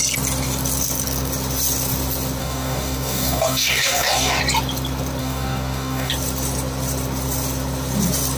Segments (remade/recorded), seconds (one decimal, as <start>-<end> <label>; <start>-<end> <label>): 0.0-2.4 recorded; 2.4-4.4 remade; 4.4-5.2 recorded; 5.2-6.1 remade; 6.1-8.4 recorded